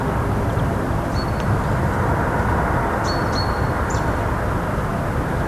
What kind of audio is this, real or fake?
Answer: real